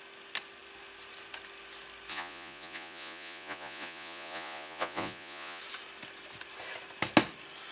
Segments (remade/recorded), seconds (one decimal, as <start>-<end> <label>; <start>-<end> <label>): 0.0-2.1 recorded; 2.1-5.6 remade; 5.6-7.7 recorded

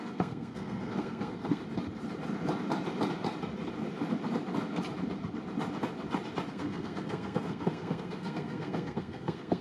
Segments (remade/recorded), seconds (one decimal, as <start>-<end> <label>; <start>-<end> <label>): 0.0-1.6 remade; 1.6-6.5 recorded; 6.5-9.6 remade

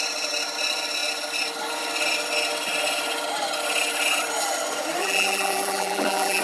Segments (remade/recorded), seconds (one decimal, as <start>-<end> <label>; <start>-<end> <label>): 0.0-5.0 recorded; 5.0-6.4 remade

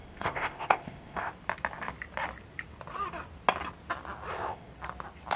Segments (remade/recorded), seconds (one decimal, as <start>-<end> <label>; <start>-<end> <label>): 0.0-1.3 remade; 1.3-4.3 recorded; 4.3-4.7 remade; 4.7-5.4 recorded

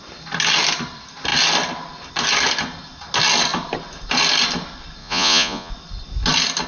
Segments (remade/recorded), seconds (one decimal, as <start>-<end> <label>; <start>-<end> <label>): 0.0-5.0 recorded; 5.0-5.7 remade; 5.7-6.7 recorded

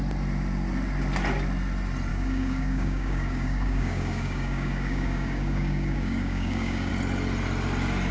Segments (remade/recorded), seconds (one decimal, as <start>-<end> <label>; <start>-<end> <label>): 0.0-2.1 recorded; 2.1-6.9 remade; 6.9-8.1 recorded

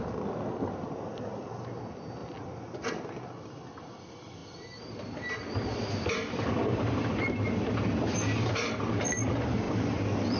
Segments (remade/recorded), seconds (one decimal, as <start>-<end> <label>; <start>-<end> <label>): 0.0-10.4 recorded

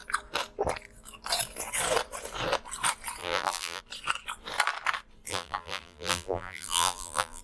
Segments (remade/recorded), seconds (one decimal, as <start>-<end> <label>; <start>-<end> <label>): 0.0-3.2 recorded; 3.2-3.8 remade; 3.8-5.3 recorded; 5.3-7.4 remade